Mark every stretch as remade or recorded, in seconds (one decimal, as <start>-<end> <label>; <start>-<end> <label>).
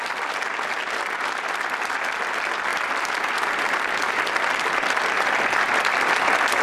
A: 0.0-6.6 recorded